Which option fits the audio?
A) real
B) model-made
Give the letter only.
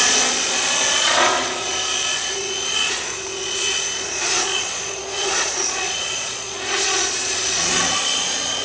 B